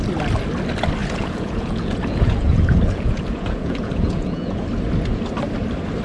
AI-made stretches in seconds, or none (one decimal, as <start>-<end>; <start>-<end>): 1.0-4.6